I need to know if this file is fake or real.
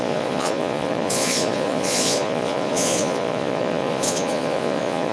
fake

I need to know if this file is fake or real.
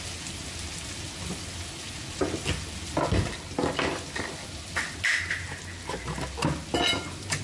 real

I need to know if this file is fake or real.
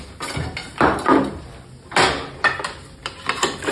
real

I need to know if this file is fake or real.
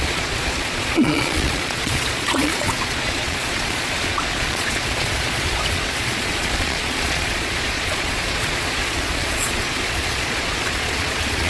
fake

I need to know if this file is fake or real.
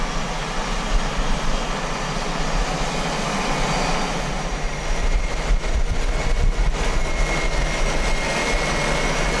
real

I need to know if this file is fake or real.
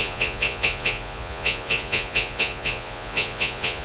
fake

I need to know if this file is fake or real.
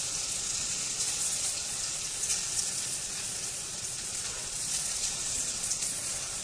fake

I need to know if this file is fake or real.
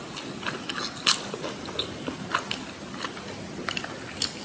real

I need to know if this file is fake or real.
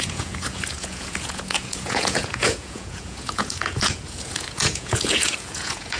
fake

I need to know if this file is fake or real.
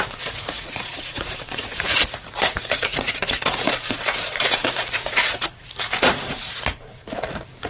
fake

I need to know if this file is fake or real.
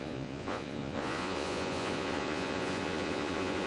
fake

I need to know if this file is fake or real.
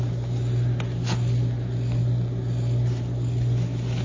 real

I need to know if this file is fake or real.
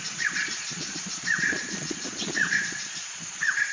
fake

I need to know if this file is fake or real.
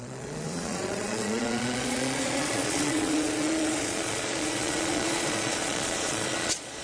fake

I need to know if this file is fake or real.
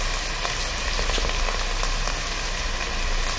real